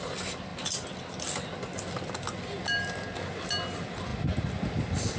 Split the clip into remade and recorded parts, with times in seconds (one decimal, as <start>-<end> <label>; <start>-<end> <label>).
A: 0.0-5.2 recorded